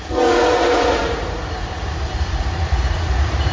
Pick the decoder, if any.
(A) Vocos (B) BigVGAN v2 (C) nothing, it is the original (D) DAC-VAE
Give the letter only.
A